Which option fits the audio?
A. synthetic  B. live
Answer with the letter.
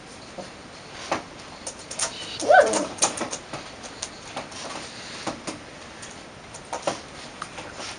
A